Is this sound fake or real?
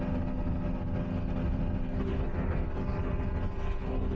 real